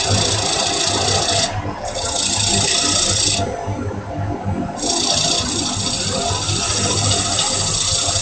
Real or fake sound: real